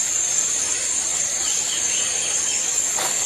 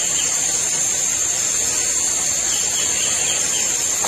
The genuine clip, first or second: second